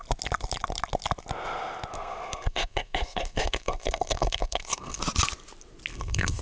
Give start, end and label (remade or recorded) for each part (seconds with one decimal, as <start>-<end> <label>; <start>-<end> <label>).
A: 0.0-1.9 recorded; 1.9-5.0 remade; 5.0-5.9 recorded; 5.9-6.4 remade